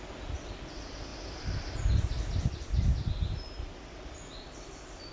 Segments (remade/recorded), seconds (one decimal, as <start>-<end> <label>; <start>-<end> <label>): 0.0-5.1 recorded